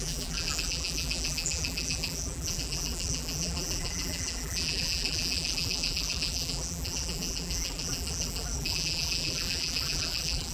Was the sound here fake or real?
fake